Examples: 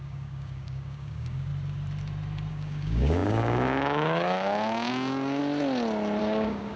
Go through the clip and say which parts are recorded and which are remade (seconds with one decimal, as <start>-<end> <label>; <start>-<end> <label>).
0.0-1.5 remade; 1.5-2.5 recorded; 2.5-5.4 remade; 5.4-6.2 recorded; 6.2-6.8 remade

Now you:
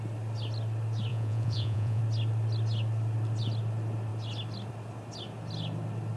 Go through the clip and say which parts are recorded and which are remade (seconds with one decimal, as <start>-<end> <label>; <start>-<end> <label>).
0.0-1.1 recorded; 1.1-2.0 remade; 2.0-6.2 recorded

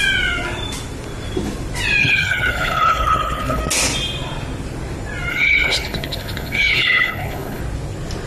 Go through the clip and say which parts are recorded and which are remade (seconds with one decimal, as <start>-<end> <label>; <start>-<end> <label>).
0.0-2.0 recorded; 2.0-3.6 remade; 3.6-5.3 recorded; 5.3-7.6 remade; 7.6-8.3 recorded

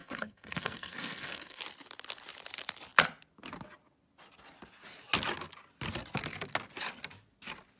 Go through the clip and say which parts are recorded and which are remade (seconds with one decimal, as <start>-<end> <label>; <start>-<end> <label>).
0.0-1.6 remade; 1.6-7.8 recorded

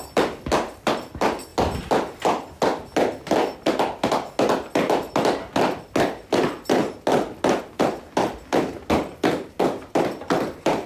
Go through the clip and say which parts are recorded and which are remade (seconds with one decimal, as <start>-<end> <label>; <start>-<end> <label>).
0.0-10.9 recorded

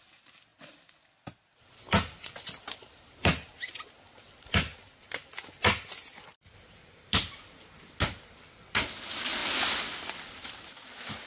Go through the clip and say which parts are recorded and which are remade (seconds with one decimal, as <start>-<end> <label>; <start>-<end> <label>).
0.0-11.3 recorded

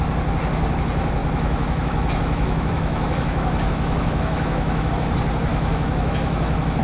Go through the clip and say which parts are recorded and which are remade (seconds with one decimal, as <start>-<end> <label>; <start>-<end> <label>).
0.0-1.2 recorded; 1.2-4.9 remade; 4.9-5.5 recorded; 5.5-6.8 remade